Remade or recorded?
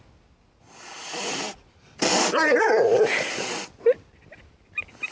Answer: recorded